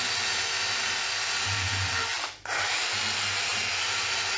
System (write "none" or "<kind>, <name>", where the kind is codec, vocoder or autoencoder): none